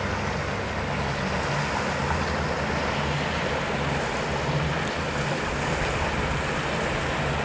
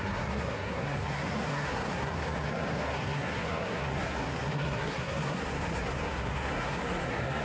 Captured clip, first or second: first